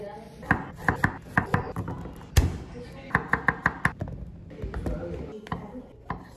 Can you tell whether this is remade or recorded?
recorded